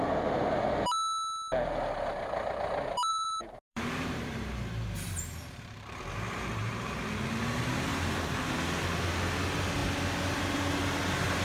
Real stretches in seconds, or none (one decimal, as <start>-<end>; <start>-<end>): 0.0-3.1; 7.0-7.9; 8.5-11.4